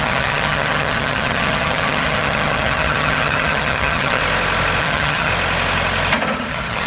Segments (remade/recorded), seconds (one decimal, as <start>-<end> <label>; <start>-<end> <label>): 0.0-4.2 remade; 4.2-4.8 recorded; 4.8-5.3 remade; 5.3-6.5 recorded; 6.5-6.9 remade